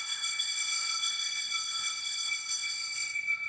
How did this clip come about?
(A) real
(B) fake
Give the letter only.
B